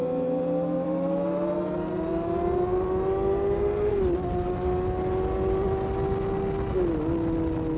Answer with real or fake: real